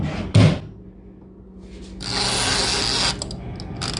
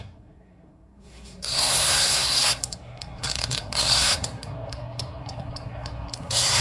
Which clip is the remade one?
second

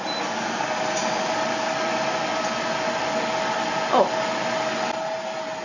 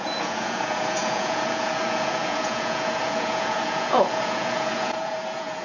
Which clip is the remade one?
second